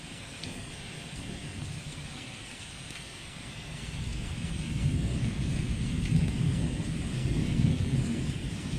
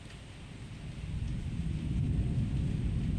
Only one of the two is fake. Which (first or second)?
first